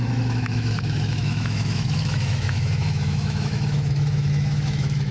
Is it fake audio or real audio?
fake